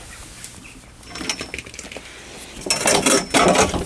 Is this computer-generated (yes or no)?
no